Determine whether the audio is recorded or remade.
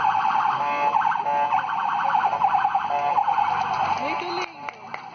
recorded